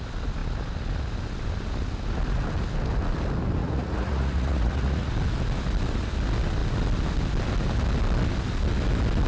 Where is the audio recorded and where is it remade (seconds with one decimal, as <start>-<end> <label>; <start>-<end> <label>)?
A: 0.0-3.6 recorded; 3.6-5.1 remade; 5.1-9.3 recorded